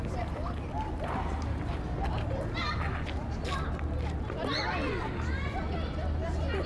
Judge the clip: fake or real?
real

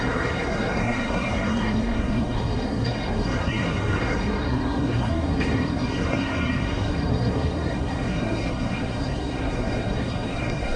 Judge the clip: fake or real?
fake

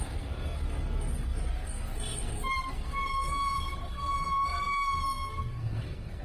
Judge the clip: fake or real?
fake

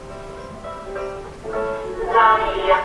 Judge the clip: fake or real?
real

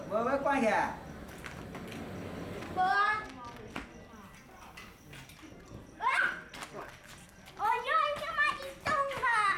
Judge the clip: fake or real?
real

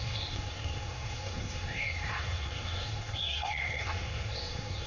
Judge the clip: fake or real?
fake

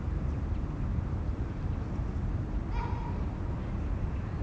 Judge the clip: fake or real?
real